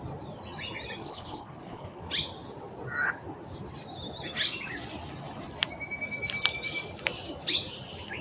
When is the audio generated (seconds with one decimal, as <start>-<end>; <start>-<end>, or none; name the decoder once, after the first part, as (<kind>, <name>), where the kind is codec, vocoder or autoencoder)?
1.0-2.0 (codec, HILCodec)